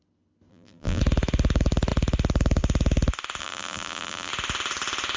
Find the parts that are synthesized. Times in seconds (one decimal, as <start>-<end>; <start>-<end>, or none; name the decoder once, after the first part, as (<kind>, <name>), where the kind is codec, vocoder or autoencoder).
0.5-1.0 (vocoder, BigVGAN v2); 3.4-4.3